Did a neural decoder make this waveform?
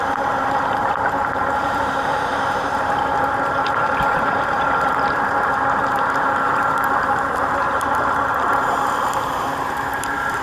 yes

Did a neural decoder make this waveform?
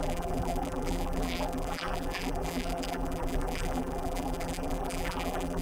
yes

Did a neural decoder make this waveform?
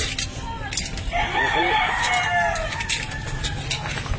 no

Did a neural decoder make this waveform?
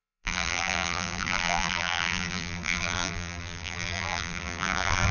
yes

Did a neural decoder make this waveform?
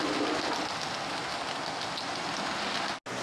no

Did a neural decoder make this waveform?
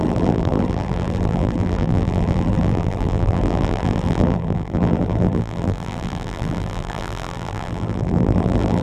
yes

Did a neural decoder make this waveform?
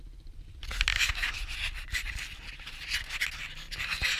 no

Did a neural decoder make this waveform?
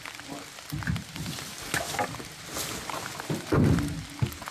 no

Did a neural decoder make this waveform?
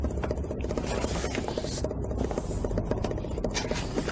no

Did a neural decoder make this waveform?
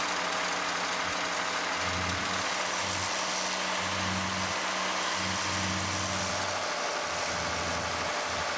no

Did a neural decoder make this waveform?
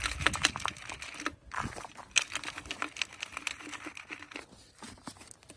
no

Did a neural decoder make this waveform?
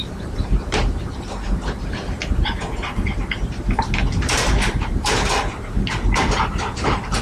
yes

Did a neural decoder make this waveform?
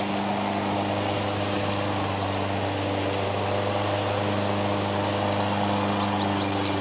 no